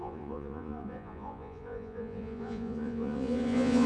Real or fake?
fake